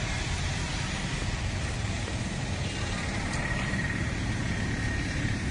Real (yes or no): no